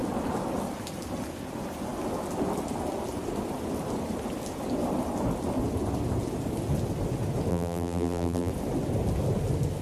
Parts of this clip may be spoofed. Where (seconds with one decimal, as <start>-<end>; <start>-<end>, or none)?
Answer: 7.5-8.5